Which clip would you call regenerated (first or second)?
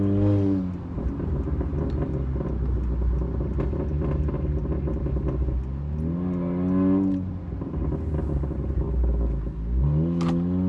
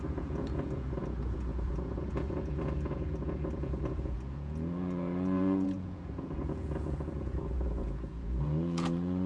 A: second